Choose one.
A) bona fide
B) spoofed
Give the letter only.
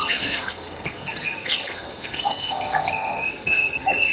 B